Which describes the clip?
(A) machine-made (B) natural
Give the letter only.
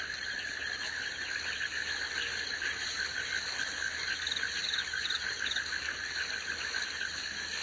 B